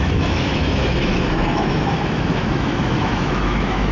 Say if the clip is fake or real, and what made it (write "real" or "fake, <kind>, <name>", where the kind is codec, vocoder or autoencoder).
fake, autoencoder, DAC-VAE